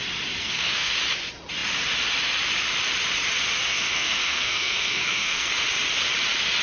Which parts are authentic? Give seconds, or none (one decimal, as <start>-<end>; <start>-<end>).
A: 0.0-0.4; 0.9-3.7; 5.5-6.6